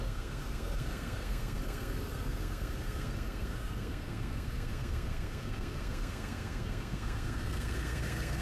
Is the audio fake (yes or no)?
yes